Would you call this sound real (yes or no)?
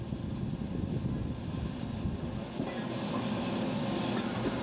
yes